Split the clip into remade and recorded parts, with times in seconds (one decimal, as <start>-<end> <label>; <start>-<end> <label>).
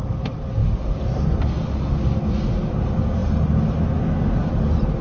0.0-5.0 recorded